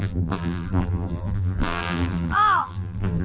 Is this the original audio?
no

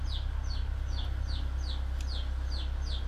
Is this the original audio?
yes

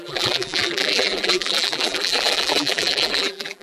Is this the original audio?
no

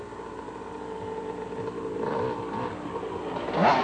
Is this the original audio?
yes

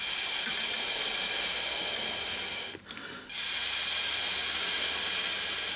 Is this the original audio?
yes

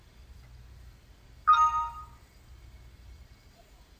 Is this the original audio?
yes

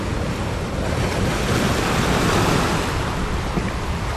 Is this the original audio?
yes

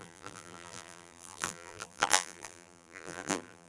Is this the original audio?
no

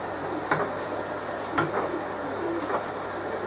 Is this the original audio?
no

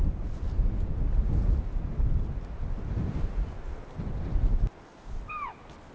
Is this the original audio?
yes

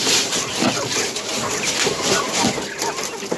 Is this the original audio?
no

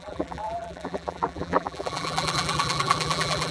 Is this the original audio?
no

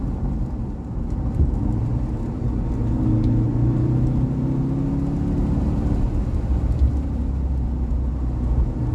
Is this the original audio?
yes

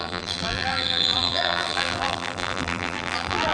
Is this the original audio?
no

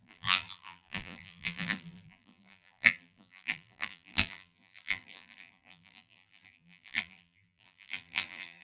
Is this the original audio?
no